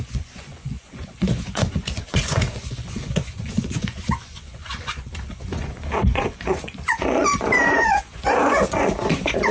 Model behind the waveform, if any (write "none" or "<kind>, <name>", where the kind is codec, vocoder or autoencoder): vocoder, Vocos